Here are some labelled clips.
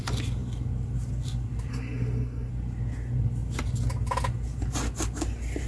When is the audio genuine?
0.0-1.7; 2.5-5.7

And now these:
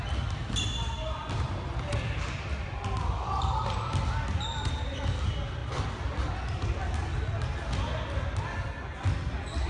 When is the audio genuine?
0.0-9.7